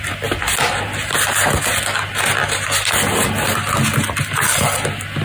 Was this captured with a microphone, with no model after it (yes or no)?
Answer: yes